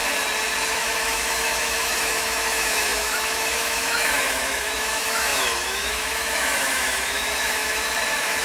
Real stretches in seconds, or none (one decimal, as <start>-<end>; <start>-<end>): 0.0-0.7